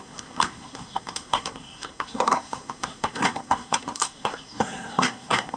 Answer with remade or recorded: remade